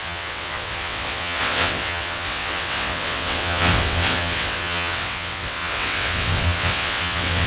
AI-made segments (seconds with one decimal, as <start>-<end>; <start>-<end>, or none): 0.0-7.5